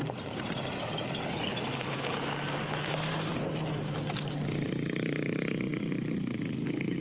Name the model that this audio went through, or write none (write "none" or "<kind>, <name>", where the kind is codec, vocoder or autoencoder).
none